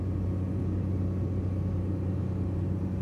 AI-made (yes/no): no